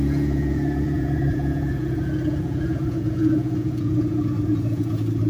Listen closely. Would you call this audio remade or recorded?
remade